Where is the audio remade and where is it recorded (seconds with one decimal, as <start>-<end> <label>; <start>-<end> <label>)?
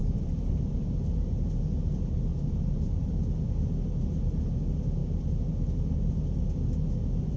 0.0-1.9 remade; 1.9-2.3 recorded; 2.3-3.4 remade; 3.4-7.4 recorded